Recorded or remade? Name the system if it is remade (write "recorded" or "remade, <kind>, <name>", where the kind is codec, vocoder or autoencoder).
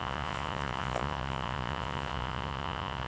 remade, vocoder, Vocos